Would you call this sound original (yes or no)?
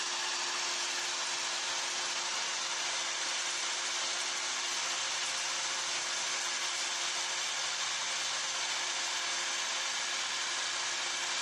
yes